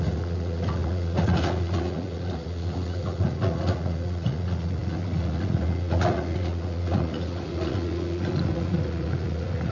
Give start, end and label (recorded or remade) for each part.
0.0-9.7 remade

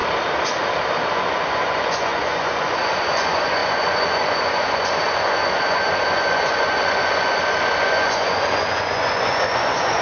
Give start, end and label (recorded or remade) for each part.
0.0-1.1 recorded; 1.1-10.0 remade